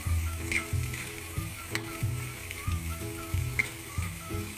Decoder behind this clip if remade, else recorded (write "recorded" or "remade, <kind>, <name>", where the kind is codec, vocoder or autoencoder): remade, codec, DAC